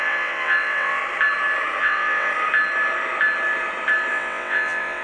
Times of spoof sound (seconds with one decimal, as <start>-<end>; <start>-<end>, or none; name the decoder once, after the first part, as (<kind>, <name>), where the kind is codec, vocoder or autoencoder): 0.0-1.0 (vocoder, WaveNeXt); 1.8-2.3; 4.1-5.0